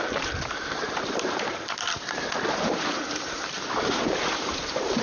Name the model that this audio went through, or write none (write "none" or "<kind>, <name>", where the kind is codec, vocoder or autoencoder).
vocoder, BigVGAN v2